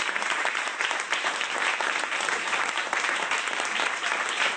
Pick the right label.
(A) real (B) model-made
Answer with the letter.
B